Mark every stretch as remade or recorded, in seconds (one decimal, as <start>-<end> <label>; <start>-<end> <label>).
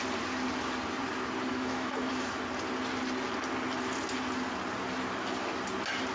0.0-1.5 recorded; 1.5-2.1 remade; 2.1-6.1 recorded